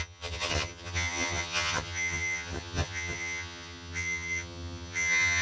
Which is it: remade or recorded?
remade